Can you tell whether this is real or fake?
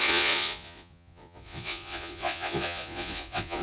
fake